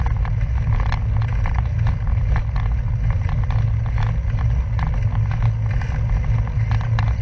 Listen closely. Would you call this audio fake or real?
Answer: real